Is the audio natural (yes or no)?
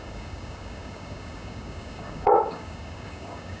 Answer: no